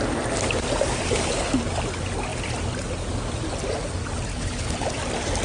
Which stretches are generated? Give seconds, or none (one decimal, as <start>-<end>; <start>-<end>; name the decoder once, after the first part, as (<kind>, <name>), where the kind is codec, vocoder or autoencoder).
4.3-4.9 (codec, HILCodec)